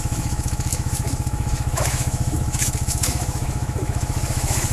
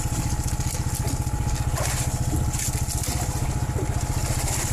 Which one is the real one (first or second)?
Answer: second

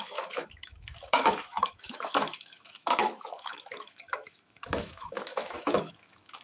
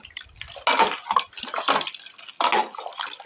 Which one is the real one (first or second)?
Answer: second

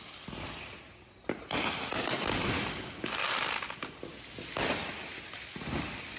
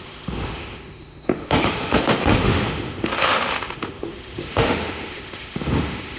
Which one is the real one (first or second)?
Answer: first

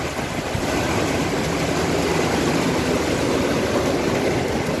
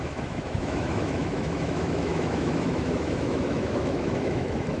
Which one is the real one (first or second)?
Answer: first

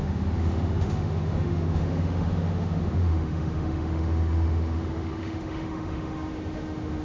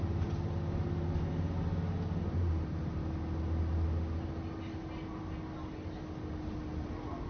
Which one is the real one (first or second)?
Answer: second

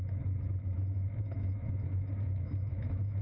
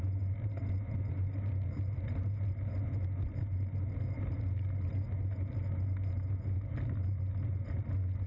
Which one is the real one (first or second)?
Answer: second